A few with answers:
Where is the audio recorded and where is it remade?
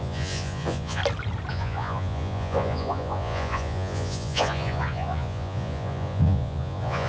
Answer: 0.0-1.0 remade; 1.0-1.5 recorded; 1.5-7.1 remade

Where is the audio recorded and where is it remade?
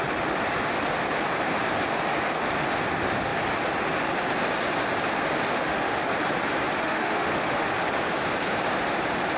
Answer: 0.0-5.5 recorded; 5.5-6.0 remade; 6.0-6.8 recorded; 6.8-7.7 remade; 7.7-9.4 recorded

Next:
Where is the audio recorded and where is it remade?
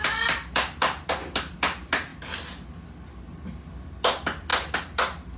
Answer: 0.0-5.4 recorded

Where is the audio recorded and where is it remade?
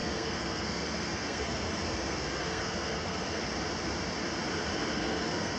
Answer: 0.0-3.4 remade; 3.4-4.8 recorded; 4.8-5.6 remade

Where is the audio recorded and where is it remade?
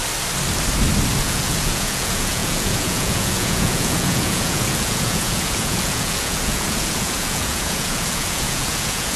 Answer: 0.0-1.2 recorded; 1.2-9.2 remade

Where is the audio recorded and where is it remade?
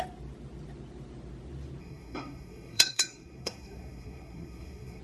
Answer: 0.0-1.8 recorded; 1.8-5.0 remade